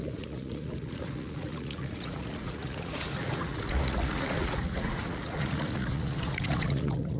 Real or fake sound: fake